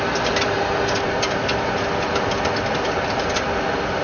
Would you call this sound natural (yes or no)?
yes